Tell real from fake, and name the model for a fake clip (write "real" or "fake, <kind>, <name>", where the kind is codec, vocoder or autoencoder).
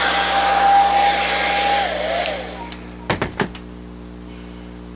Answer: real